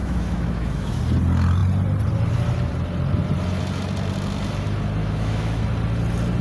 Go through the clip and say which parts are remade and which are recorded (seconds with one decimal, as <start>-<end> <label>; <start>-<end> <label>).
0.0-1.0 remade; 1.0-5.0 recorded; 5.0-5.6 remade; 5.6-6.4 recorded